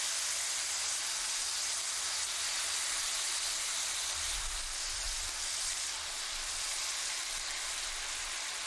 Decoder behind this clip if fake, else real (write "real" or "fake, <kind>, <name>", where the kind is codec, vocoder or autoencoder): real